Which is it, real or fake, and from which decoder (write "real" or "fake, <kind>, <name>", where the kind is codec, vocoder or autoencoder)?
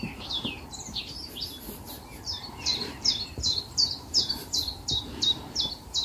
fake, vocoder, BigVGAN v2